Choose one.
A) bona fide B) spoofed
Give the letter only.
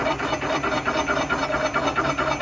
A